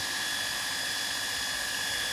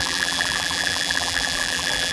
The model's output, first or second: second